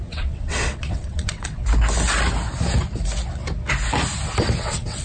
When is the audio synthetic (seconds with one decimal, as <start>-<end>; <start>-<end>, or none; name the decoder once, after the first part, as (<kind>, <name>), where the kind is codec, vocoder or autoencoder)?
0.0-1.6 (vocoder, WaveNeXt); 4.6-5.0